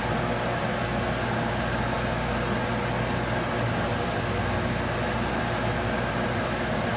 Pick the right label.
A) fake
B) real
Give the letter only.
B